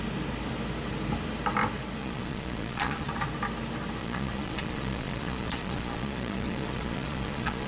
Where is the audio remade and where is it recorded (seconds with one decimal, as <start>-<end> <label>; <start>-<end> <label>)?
0.0-2.0 recorded; 2.0-3.1 remade; 3.1-4.0 recorded; 4.0-7.7 remade